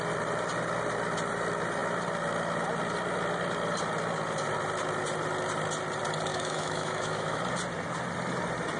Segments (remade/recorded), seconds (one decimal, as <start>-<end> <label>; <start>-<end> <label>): 0.0-6.3 recorded; 6.3-7.4 remade; 7.4-8.8 recorded